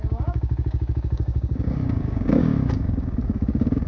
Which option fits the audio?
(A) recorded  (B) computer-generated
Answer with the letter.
B